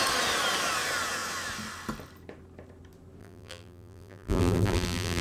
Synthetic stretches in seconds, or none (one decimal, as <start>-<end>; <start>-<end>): 3.2-5.2